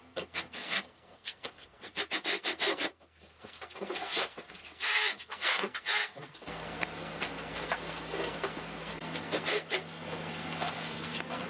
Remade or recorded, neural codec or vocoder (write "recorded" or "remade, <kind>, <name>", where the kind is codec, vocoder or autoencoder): remade, codec, SNAC